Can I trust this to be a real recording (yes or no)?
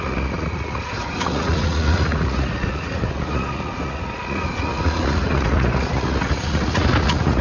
no